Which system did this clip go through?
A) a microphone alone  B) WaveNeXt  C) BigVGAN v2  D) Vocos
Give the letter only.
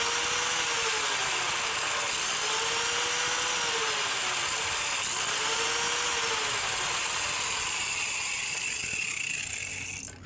A